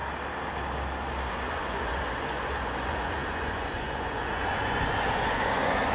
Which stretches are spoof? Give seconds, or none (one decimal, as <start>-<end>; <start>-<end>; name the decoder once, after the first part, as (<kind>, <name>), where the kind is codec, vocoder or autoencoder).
1.3-5.9 (vocoder, Vocos)